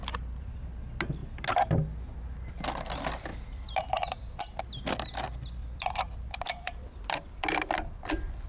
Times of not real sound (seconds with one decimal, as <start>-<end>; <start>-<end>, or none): 3.3-4.6; 5.6-7.3